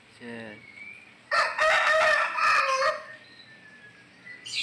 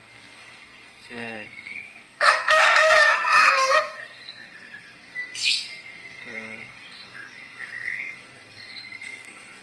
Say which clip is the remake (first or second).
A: second